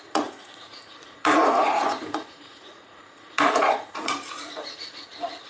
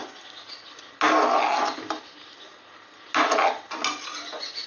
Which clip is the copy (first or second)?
first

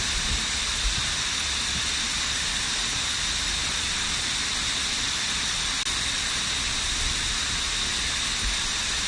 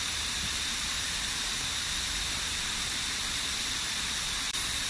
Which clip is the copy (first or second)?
second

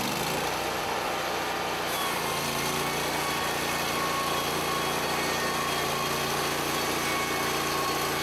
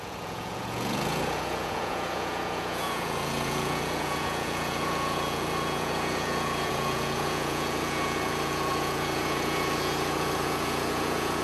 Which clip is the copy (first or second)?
second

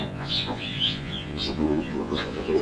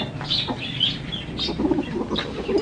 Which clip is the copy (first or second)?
first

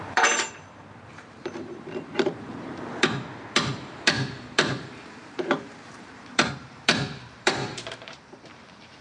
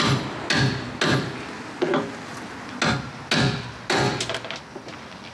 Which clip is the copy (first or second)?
first